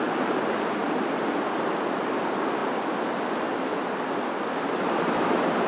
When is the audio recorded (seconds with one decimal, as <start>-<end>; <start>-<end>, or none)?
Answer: 0.0-5.7